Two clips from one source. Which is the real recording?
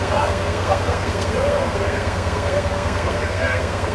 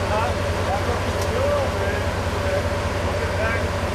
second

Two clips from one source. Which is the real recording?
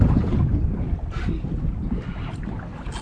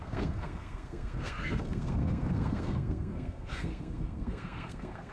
first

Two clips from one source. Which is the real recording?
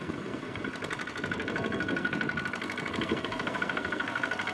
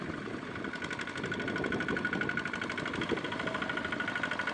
second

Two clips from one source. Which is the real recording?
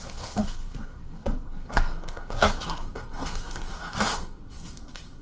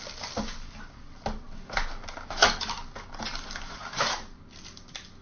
second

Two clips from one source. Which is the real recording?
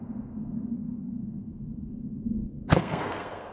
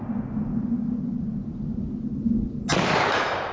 second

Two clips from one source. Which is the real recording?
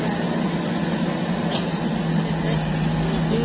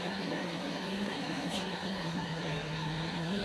first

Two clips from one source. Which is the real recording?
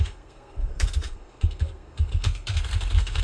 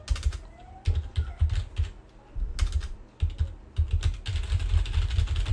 second